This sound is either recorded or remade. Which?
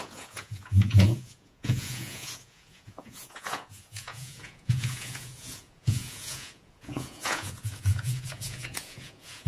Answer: remade